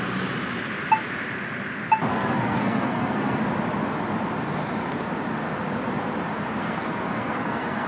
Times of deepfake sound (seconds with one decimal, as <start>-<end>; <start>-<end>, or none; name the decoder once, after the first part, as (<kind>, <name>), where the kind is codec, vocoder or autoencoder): 2.1-3.4 (codec, SNAC); 6.6-7.9

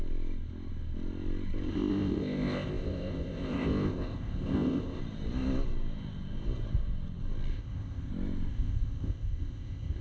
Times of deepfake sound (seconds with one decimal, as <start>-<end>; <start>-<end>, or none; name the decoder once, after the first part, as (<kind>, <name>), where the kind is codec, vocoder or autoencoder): 1.7-5.0 (codec, ZipCodec); 7.5-8.1; 8.5-10.0

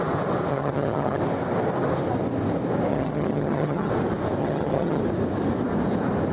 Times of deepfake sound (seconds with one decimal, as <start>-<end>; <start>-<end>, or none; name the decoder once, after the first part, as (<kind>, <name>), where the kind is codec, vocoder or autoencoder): 0.5-1.2 (vocoder, HiFi-GAN); 2.9-3.9; 4.4-5.0

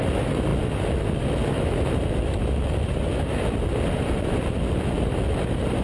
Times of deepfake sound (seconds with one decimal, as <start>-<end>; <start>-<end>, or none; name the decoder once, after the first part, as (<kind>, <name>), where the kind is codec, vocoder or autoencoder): none

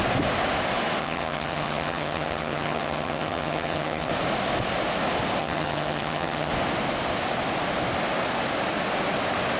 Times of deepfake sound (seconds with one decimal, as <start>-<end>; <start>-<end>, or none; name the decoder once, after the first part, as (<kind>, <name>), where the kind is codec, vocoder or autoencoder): 1.0-4.1 (vocoder, HiFi-GAN); 5.4-6.5

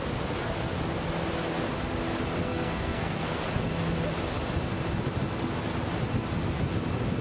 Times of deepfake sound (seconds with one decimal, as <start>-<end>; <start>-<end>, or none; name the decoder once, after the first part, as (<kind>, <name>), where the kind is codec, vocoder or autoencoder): 2.4-3.4 (codec, SNAC)

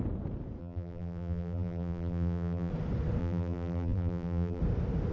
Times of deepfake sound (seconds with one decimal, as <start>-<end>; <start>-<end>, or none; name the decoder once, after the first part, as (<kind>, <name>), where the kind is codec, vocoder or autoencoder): 0.6-2.7 (vocoder, BigVGAN v2); 3.2-4.6